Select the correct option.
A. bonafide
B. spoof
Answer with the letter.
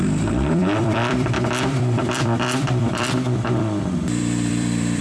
B